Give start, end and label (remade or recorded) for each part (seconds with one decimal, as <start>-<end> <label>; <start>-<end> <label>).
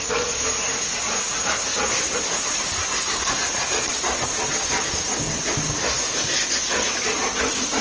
0.0-7.8 recorded